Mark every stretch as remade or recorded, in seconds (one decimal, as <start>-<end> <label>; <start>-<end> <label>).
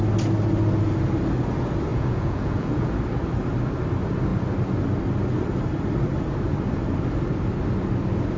0.0-1.9 recorded; 1.9-2.9 remade; 2.9-8.4 recorded